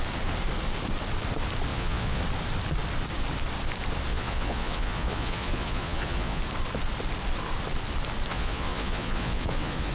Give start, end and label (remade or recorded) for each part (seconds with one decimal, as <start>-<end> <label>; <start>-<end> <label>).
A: 0.0-1.7 recorded; 1.7-2.2 remade; 2.2-4.1 recorded; 4.1-6.4 remade; 6.4-8.3 recorded; 8.3-9.9 remade